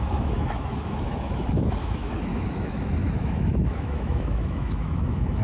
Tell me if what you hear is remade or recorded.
remade